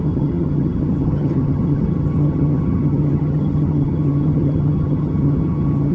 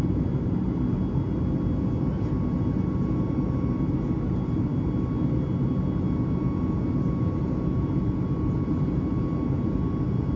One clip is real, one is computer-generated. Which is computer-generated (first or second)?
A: first